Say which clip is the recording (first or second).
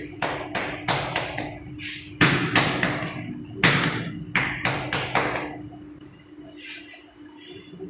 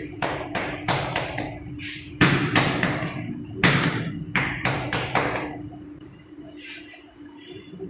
first